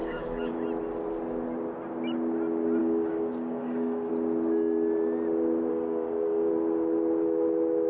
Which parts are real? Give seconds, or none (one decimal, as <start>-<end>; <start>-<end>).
0.5-2.8; 4.1-5.7; 6.5-7.9